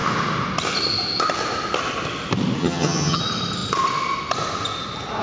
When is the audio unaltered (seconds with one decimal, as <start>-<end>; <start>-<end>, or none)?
0.0-2.6; 3.2-5.2